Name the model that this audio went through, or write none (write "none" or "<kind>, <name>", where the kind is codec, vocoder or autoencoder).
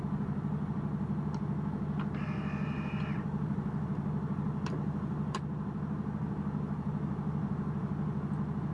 none